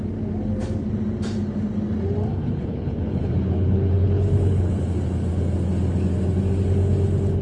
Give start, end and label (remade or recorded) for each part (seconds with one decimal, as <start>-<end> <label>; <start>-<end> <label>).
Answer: 0.0-2.4 recorded; 2.4-4.7 remade; 4.7-7.4 recorded